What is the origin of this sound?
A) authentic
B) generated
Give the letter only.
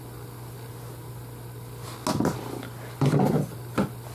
A